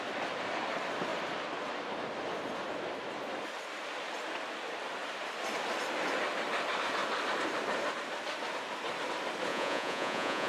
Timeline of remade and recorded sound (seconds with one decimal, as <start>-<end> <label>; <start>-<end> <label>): 0.0-9.5 recorded; 9.5-10.5 remade